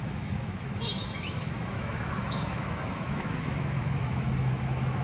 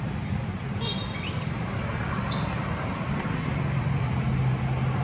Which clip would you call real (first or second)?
second